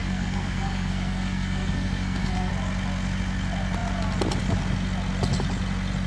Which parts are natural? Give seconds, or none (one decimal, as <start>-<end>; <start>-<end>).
2.5-6.1